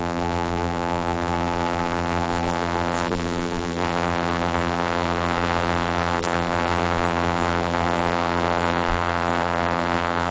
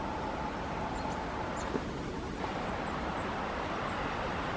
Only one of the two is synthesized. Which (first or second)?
first